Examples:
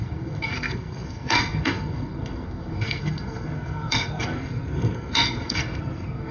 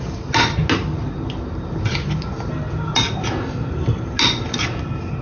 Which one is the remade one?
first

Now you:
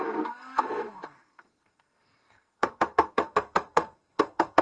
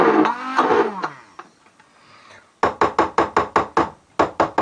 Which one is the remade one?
first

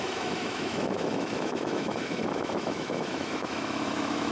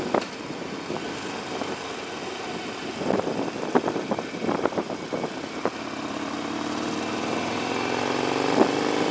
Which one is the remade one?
first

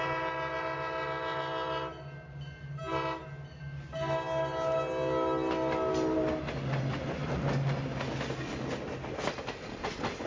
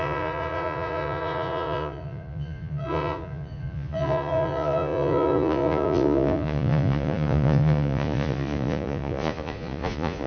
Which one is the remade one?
second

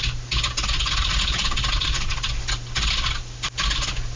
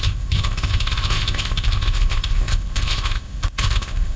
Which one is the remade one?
second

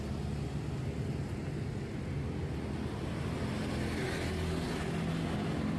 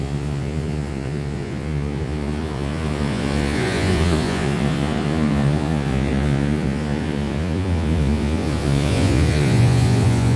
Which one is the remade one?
second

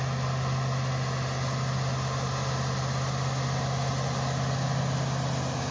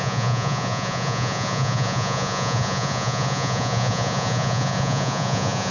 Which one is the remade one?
second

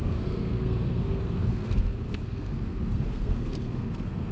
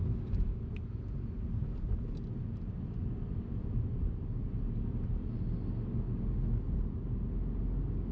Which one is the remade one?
first